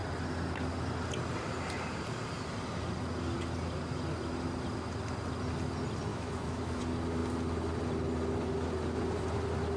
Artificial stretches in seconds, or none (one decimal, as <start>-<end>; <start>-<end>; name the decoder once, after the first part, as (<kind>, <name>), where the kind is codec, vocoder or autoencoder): 6.1-6.8 (autoencoder, DAC-VAE)